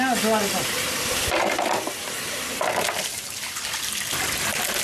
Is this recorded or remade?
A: recorded